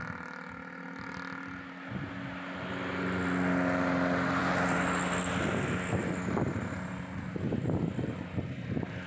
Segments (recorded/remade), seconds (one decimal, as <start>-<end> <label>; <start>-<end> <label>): 0.0-9.1 recorded